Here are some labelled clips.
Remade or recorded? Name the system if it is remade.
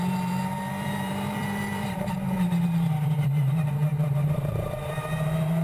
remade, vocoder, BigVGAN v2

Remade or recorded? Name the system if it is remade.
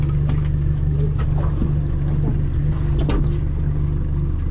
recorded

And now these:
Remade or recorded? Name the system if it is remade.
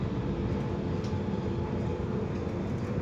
remade, vocoder, BigVGAN v2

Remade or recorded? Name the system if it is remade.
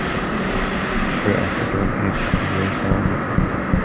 recorded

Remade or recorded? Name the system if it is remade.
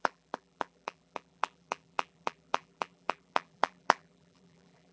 remade, vocoder, BigVGAN v2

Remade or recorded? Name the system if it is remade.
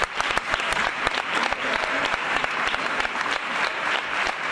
remade, vocoder, BigVGAN v2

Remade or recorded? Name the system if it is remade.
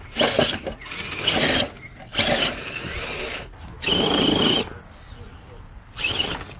recorded